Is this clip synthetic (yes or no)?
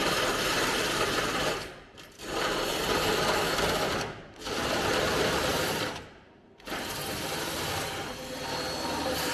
yes